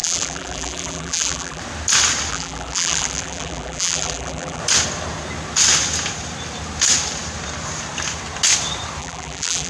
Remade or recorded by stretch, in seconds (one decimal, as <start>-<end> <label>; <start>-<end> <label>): 0.0-1.6 remade; 1.6-2.3 recorded; 2.3-4.6 remade; 4.6-9.0 recorded; 9.0-9.7 remade